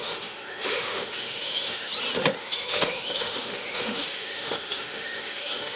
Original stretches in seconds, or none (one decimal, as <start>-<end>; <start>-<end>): 1.9-2.4